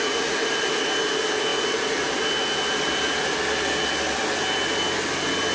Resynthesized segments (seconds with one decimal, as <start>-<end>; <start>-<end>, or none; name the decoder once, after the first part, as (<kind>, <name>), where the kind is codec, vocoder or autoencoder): none